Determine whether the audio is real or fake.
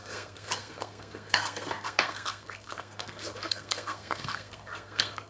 fake